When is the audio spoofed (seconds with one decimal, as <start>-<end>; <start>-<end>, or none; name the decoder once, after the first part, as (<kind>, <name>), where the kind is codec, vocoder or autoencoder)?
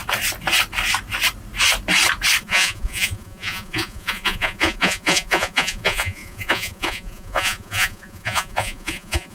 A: 2.4-9.3 (vocoder, Vocos)